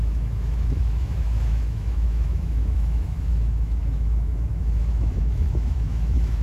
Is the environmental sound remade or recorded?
remade